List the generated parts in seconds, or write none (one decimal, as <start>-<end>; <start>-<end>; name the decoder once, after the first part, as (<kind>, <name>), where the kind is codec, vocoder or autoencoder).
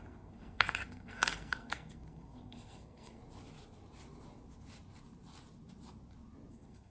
0.0-3.2 (codec, SNAC); 6.5-6.9